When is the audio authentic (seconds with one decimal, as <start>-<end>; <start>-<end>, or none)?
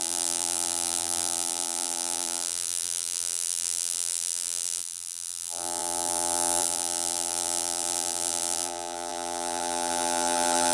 none